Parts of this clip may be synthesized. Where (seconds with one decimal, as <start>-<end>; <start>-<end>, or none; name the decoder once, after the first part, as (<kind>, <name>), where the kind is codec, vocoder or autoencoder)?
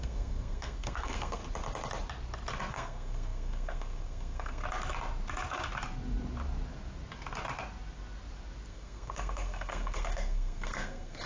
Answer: 0.0-1.4 (codec, SNAC); 2.7-4.6; 8.7-11.3